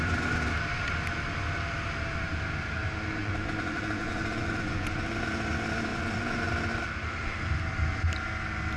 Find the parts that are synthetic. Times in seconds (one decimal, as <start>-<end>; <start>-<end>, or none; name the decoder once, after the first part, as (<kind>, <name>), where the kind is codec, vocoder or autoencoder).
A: 3.2-5.2 (vocoder, Vocos); 5.9-6.5